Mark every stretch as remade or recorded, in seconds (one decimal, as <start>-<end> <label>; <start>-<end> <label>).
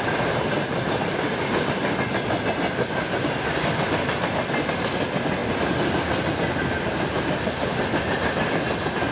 0.0-9.1 recorded